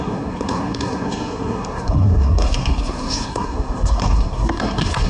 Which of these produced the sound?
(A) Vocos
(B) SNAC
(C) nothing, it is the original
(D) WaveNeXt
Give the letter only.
B